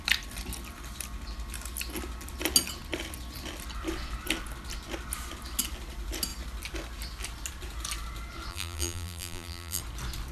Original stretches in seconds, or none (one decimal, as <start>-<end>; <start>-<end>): 0.0-8.5; 9.8-10.3